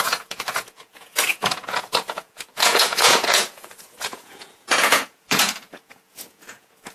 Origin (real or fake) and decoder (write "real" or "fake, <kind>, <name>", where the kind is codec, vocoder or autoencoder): fake, vocoder, Vocos